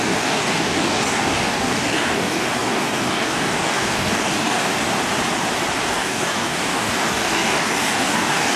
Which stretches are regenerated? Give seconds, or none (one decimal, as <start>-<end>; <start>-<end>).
0.0-4.7; 5.8-8.6